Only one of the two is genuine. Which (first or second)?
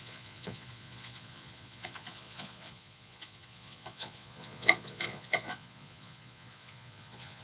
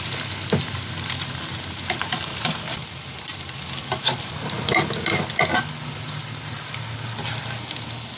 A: second